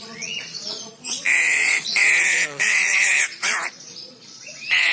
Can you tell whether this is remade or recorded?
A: remade